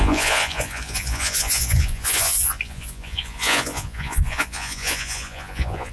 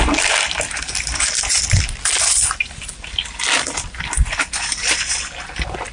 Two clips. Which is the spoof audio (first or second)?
first